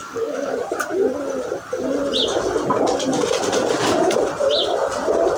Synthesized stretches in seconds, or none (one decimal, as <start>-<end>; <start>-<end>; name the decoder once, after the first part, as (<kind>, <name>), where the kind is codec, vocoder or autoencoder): 0.0-0.6 (codec, DAC)